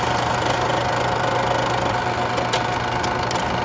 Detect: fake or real real